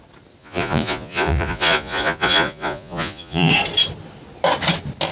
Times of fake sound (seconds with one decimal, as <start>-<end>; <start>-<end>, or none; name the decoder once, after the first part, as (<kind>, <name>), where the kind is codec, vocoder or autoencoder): 0.4-3.5 (vocoder, Vocos)